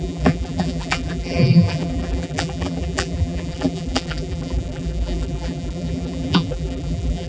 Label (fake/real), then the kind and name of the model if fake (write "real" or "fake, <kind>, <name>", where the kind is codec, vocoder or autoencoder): fake, vocoder, BigVGAN v2